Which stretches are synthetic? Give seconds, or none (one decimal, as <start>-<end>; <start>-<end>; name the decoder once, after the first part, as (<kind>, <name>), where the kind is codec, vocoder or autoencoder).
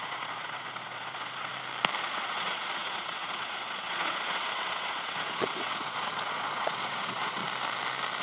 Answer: 0.0-1.5 (vocoder, Vocos); 2.0-7.4